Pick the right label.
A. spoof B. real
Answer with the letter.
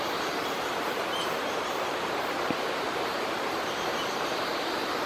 A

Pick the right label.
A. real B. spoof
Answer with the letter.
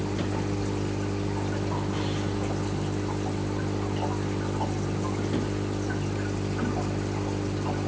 A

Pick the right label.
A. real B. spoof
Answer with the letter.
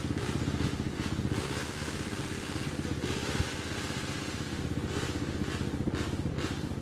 A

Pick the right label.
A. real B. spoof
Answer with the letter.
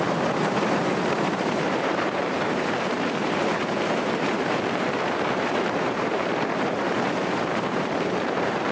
B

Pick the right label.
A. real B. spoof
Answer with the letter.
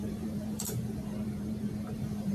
B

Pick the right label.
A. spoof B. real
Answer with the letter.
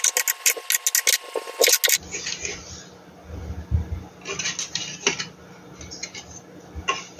B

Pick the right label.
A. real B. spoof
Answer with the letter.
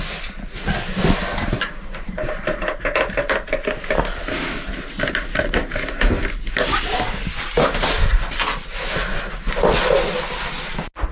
A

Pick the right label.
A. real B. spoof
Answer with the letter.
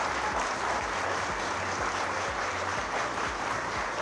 B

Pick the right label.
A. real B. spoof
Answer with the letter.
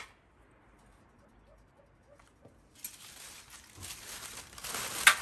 A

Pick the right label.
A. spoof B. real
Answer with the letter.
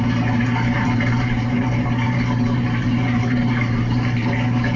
A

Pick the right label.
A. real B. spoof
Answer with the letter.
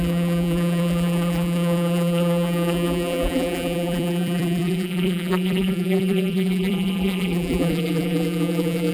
B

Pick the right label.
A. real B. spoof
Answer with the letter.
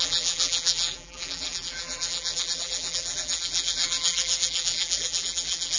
B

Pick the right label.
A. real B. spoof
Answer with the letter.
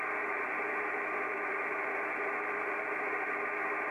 A